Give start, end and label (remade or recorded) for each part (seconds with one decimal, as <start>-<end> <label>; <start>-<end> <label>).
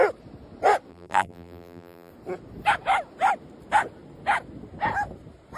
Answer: 0.0-0.9 recorded; 0.9-2.1 remade; 2.1-5.6 recorded